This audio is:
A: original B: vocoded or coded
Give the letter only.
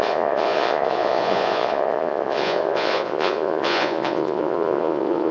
B